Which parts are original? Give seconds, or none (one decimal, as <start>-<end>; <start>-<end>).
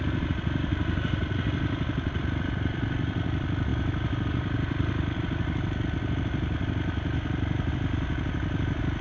none